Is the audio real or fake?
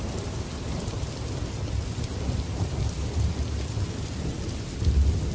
real